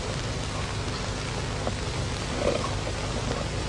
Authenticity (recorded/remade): recorded